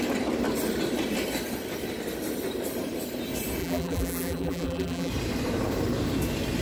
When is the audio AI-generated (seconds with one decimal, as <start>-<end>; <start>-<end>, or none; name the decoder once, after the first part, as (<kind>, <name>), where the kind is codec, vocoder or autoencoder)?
3.6-5.1 (vocoder, BigVGAN v2)